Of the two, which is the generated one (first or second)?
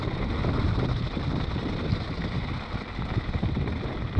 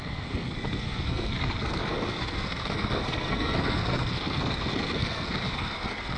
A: second